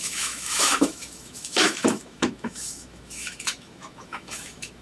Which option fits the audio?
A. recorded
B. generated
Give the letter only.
B